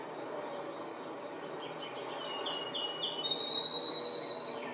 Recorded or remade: recorded